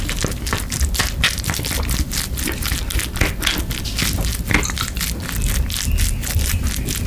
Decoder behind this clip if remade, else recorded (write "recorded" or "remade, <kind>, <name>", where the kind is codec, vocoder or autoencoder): recorded